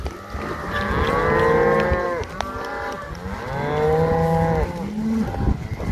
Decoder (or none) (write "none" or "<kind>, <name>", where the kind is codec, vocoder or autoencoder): none